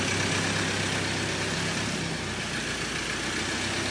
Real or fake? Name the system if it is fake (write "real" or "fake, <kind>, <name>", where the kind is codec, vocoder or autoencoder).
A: real